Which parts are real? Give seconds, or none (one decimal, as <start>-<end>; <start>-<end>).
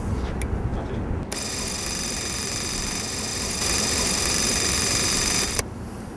0.0-3.3